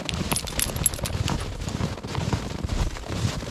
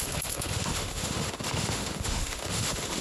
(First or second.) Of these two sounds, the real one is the first